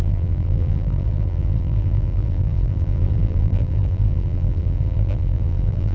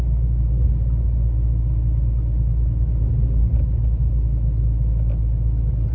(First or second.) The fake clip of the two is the first